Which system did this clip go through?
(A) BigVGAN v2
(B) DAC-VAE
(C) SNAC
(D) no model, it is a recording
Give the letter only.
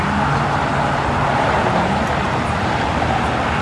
D